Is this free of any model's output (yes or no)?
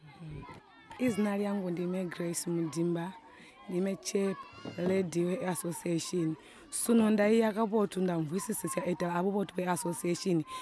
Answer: yes